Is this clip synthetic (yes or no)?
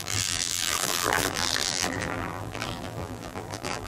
yes